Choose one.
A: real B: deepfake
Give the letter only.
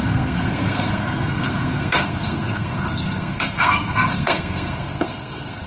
B